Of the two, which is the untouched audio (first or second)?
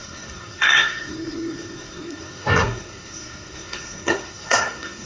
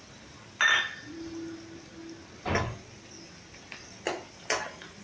second